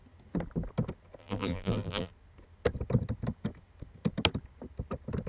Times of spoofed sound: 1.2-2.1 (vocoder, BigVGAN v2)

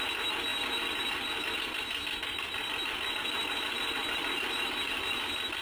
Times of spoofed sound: 0.0-0.5 (vocoder, BigVGAN v2); 1.6-5.6

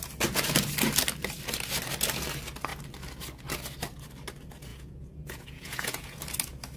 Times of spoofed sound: 4.7-6.2 (vocoder, Vocos)

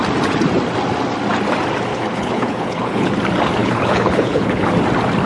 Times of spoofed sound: 1.9-3.1 (codec, HILCodec); 3.6-4.7

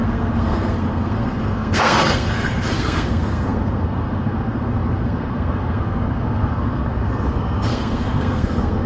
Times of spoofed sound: 0.0-8.9 (codec, SNAC)